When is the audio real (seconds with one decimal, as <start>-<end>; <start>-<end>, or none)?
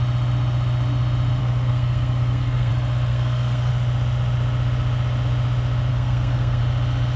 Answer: 0.0-1.4; 2.7-3.1; 3.7-5.9; 6.6-7.2